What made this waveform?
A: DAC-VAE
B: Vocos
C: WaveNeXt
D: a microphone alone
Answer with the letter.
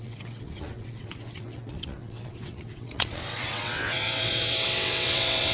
C